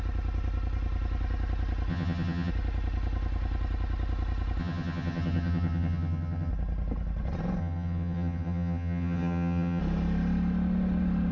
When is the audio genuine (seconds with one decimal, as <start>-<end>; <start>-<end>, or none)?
0.0-1.9; 2.5-4.6; 6.5-7.6; 9.8-11.3

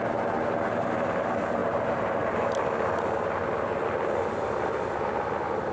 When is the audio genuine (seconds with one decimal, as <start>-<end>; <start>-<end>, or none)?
0.0-1.6; 2.6-5.7

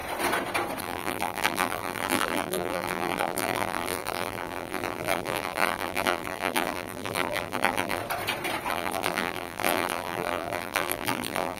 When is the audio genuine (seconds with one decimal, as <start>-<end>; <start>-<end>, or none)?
0.0-0.8; 8.0-8.7

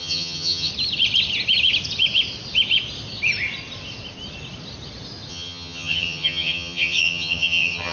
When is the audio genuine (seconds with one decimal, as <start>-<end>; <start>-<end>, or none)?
0.7-5.3

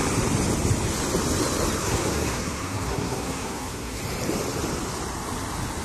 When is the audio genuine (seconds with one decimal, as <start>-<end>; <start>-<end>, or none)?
0.0-1.8; 4.0-5.8